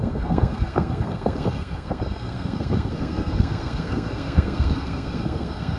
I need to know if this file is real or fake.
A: fake